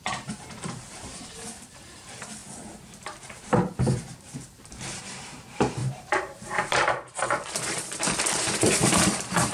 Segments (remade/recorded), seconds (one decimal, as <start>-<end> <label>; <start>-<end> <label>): 0.0-9.5 remade